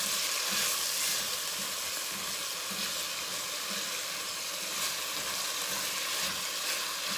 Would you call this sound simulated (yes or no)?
no